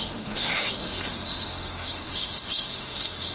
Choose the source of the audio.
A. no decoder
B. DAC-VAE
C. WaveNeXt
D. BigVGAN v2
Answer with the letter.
B